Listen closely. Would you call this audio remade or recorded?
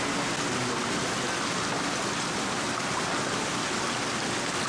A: recorded